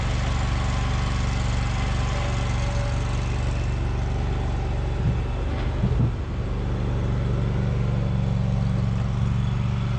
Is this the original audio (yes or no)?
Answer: yes